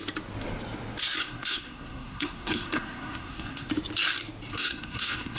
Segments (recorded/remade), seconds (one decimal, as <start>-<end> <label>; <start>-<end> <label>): 0.0-1.2 recorded; 1.2-3.7 remade; 3.7-4.5 recorded; 4.5-5.4 remade